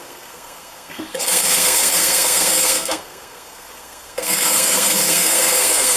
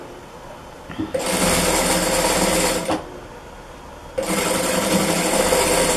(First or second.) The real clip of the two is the second